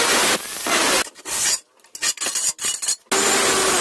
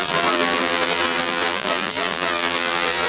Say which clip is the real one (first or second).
first